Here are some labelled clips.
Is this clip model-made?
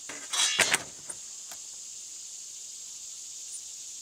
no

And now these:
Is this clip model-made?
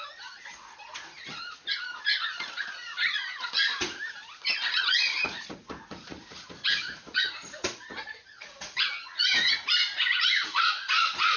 yes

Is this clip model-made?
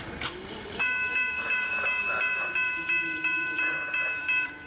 yes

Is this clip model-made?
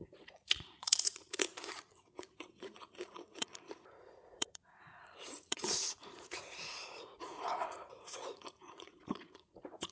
yes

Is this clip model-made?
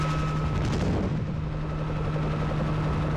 no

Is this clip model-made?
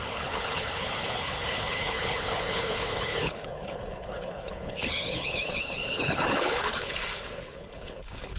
yes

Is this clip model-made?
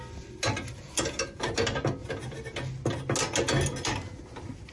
no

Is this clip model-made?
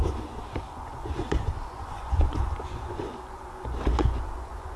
yes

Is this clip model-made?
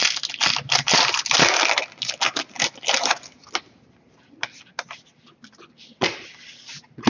no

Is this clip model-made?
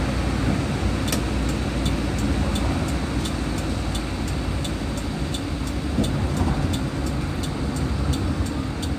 no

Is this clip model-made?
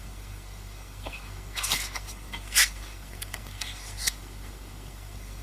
yes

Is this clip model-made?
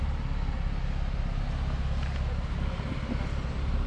no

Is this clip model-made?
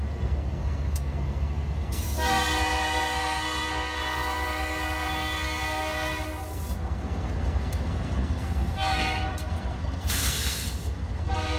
yes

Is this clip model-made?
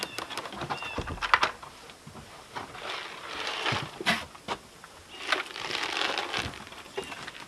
no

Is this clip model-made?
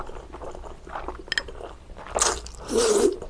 no